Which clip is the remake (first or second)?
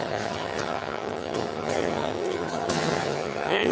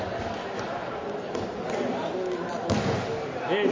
first